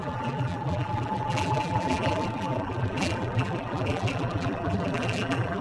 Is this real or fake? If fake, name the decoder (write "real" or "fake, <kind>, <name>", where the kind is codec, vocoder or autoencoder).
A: fake, vocoder, BigVGAN v2